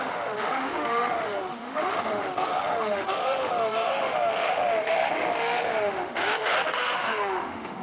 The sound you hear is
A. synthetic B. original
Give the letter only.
A